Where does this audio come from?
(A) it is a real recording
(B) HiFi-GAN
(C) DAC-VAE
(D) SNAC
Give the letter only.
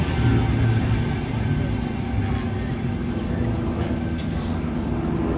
A